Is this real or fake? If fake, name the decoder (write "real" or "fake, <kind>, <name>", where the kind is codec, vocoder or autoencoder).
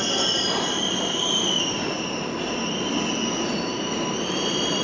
real